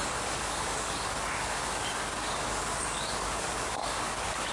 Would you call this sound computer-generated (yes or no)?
yes